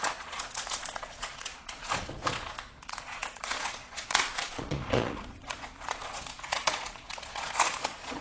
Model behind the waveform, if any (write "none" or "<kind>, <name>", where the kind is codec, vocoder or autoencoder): vocoder, Vocos